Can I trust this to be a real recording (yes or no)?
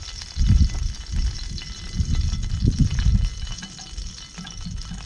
yes